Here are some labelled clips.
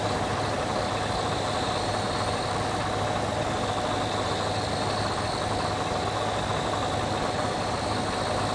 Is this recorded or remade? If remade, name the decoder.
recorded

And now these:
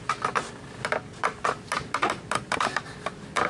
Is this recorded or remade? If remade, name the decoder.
recorded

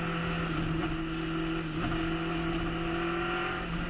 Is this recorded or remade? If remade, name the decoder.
recorded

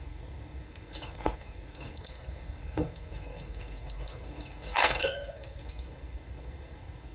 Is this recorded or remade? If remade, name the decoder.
remade, codec, SNAC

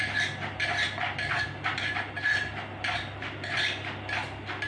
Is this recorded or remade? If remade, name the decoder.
recorded